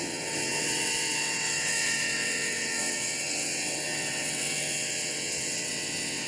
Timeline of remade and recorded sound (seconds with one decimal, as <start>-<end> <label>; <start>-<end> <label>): 0.0-6.3 remade